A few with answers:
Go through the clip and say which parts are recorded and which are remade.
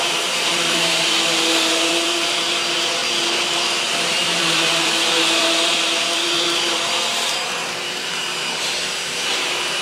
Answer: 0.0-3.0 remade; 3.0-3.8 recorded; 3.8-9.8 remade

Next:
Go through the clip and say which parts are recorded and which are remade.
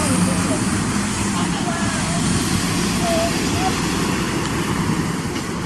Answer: 0.0-3.4 remade; 3.4-5.7 recorded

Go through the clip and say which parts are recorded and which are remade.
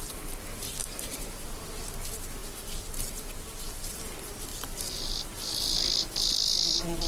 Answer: 0.0-0.8 recorded; 0.8-1.9 remade; 1.9-7.1 recorded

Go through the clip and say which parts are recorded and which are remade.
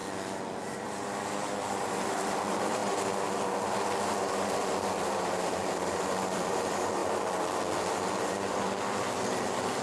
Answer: 0.0-0.6 recorded; 0.6-2.8 remade; 2.8-4.1 recorded; 4.1-7.0 remade; 7.0-8.3 recorded; 8.3-9.8 remade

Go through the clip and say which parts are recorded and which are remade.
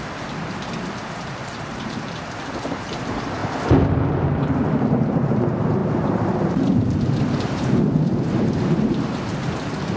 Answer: 0.0-3.4 remade; 3.4-5.1 recorded; 5.1-10.0 remade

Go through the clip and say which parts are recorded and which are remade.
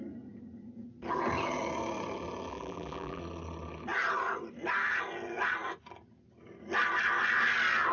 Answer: 0.0-2.5 recorded; 2.5-3.2 remade; 3.2-7.9 recorded